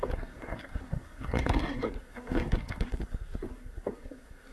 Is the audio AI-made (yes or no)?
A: yes